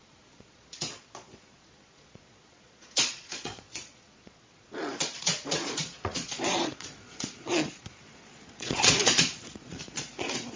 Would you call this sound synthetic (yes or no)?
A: yes